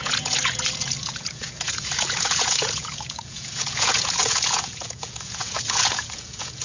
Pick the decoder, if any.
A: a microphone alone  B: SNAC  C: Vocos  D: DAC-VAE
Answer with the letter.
C